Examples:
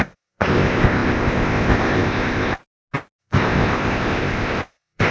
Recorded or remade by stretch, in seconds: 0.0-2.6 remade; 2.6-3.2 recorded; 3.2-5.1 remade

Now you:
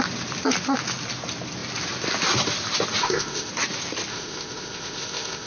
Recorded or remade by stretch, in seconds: 0.0-3.0 recorded; 3.0-3.5 remade; 3.5-4.1 recorded; 4.1-5.5 remade

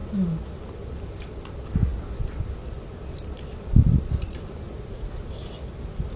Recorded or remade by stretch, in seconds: 0.0-6.2 recorded